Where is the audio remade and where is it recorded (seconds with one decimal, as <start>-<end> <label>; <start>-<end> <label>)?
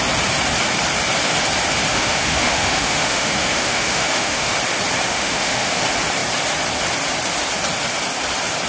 0.0-1.9 recorded; 1.9-4.5 remade; 4.5-5.1 recorded; 5.1-5.8 remade; 5.8-8.7 recorded